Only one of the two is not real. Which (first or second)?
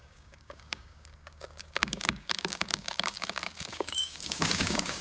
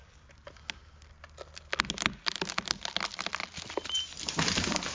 first